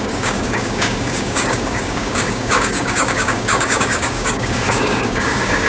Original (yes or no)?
no